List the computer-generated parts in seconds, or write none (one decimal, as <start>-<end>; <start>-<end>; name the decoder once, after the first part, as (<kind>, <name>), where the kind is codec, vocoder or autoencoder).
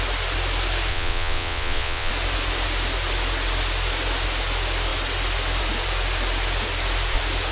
0.9-2.1 (vocoder, WaveNeXt)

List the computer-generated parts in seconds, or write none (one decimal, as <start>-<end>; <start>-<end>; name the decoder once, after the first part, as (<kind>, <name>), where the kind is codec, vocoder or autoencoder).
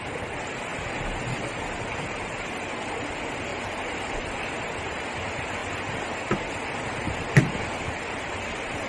3.5-4.4 (vocoder, BigVGAN v2)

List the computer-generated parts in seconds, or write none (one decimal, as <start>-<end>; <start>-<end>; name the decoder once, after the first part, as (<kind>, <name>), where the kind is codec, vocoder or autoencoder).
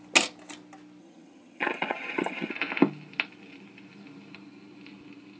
1.0-2.5 (vocoder, HiFi-GAN)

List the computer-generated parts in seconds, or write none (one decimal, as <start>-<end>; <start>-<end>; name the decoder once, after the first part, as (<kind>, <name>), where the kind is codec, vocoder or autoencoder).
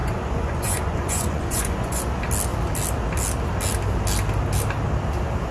0.0-2.0 (vocoder, Vocos)